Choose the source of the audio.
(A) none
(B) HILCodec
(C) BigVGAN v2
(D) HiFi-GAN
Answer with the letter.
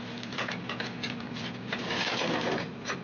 A